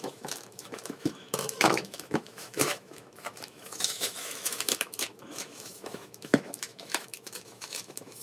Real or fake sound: fake